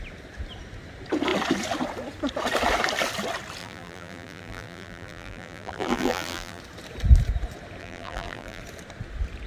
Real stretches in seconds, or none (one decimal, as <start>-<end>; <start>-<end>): 0.0-3.6; 6.6-7.8; 8.6-9.5